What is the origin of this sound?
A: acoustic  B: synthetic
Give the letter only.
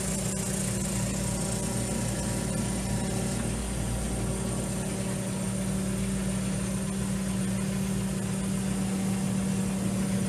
A